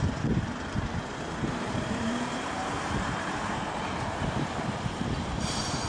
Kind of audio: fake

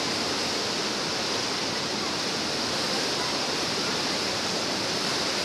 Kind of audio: real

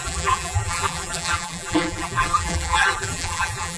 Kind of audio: fake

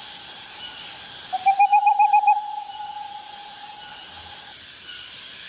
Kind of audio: real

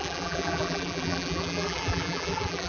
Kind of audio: fake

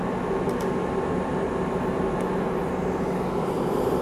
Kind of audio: real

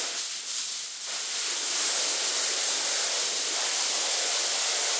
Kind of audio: real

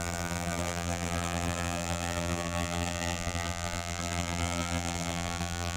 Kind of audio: fake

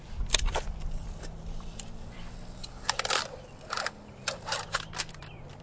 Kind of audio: fake